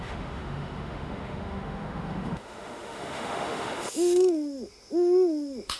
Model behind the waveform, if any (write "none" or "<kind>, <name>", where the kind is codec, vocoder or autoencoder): autoencoder, DAC-VAE